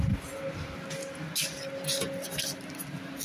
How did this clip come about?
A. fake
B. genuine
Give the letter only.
B